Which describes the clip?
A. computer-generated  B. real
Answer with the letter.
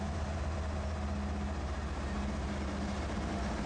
B